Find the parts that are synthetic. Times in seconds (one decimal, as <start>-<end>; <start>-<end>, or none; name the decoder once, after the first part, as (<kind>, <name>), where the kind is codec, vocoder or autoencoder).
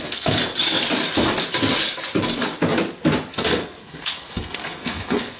0.0-0.4 (codec, SNAC); 3.3-5.4